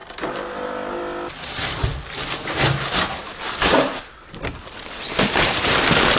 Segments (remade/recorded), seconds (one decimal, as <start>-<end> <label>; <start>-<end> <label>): 0.0-6.2 recorded